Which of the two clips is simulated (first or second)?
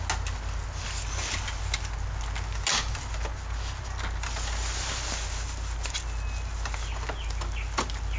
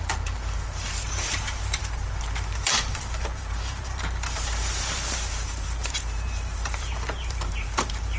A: second